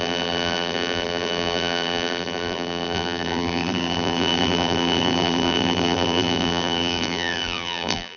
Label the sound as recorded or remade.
remade